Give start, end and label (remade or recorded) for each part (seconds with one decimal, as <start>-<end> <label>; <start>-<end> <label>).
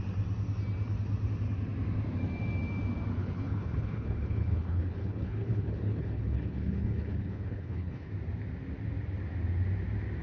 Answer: 0.0-3.2 recorded; 3.2-8.1 remade; 8.1-10.2 recorded